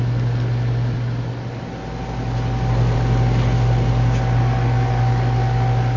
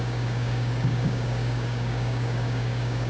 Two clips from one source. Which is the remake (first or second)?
second